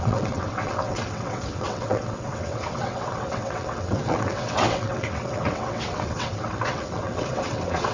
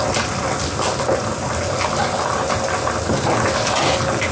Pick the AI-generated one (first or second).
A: first